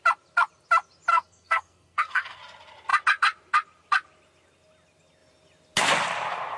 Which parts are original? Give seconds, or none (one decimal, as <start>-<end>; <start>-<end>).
0.0-1.1; 2.4-6.6